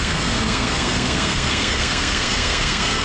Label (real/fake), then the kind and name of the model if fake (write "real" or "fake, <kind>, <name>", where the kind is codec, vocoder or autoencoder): fake, codec, SNAC